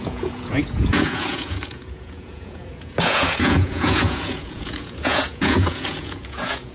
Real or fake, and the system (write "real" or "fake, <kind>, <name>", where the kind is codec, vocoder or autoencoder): fake, vocoder, Vocos